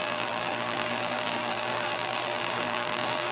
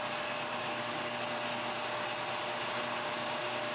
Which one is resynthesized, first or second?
first